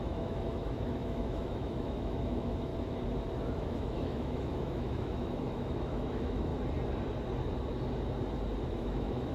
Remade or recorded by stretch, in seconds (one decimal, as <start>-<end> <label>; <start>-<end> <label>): 0.0-2.7 remade; 2.7-3.5 recorded; 3.5-6.5 remade; 6.5-8.7 recorded; 8.7-9.3 remade